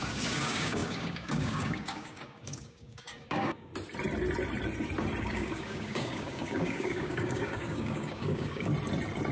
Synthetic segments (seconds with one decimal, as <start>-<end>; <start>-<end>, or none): 0.0-3.7; 5.2-8.7